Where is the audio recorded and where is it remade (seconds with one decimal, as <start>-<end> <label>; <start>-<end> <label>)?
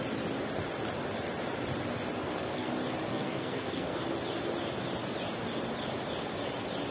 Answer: 0.0-2.2 recorded; 2.2-2.7 remade; 2.7-3.1 recorded; 3.1-4.0 remade; 4.0-6.9 recorded